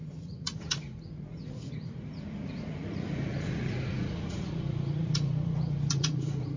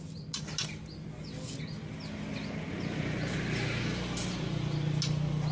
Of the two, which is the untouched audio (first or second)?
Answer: second